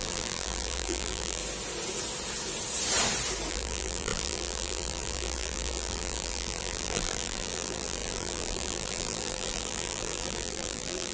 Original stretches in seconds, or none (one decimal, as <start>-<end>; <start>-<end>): 1.4-3.5

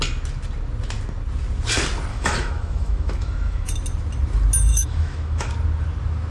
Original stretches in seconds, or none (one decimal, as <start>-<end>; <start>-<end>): 0.0-2.1; 3.7-4.7; 5.5-6.3

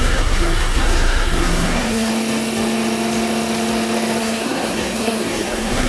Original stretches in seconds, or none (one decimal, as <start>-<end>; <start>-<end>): 2.1-4.2

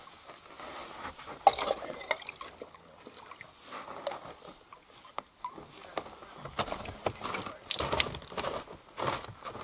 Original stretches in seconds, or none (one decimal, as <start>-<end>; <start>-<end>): 0.0-0.8; 2.1-9.6

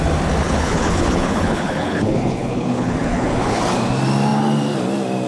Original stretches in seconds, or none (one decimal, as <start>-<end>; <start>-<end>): 0.0-0.4; 3.6-5.3

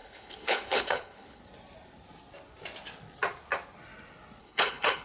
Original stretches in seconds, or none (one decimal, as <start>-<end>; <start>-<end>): 1.4-4.4

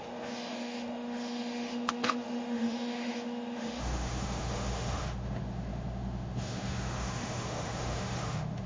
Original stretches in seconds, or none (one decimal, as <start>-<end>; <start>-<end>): none

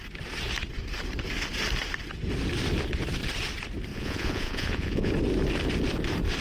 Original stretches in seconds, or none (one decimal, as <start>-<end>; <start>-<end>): 0.0-3.9; 5.1-6.4